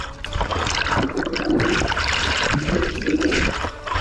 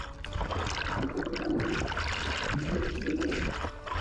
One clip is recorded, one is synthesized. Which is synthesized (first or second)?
first